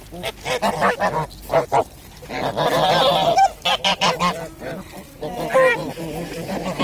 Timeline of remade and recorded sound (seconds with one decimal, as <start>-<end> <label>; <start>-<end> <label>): 0.0-5.8 recorded; 5.8-6.8 remade